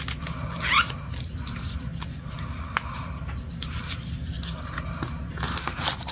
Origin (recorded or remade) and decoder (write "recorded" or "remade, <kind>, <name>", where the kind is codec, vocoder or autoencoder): recorded